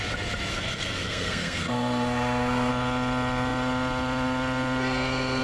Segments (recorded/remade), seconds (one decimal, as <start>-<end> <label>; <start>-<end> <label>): 0.0-0.5 recorded; 0.5-2.7 remade; 2.7-5.4 recorded